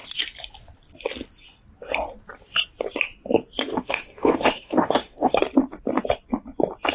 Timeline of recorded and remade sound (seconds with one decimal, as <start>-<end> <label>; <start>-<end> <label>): 0.0-3.7 recorded; 3.7-5.4 remade; 5.4-6.9 recorded